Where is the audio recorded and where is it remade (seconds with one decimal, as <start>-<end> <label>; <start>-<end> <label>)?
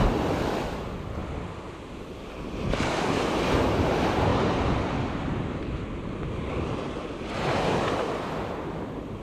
0.0-9.2 recorded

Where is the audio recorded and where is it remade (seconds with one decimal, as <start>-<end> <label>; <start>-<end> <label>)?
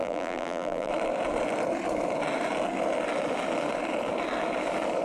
0.0-0.9 remade; 0.9-5.0 recorded